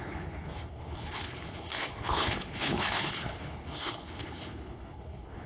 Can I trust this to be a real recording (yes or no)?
no